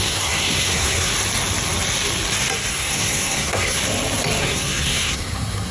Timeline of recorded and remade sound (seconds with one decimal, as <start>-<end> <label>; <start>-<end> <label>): 0.0-1.1 remade; 1.1-2.7 recorded; 2.7-3.8 remade; 3.8-4.4 recorded; 4.4-5.7 remade